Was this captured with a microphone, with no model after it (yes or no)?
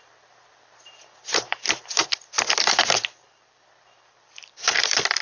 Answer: no